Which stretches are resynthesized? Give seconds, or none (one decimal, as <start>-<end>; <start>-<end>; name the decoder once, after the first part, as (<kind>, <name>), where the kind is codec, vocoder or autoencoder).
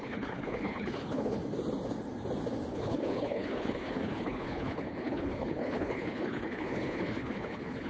0.0-1.4 (codec, HILCodec); 2.7-7.9